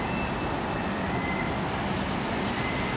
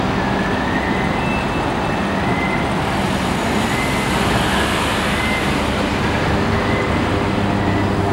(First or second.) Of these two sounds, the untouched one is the second